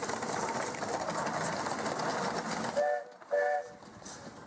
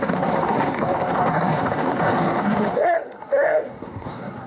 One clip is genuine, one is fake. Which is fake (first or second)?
second